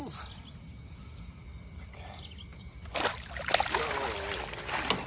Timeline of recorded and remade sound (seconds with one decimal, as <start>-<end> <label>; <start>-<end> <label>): 0.0-5.1 recorded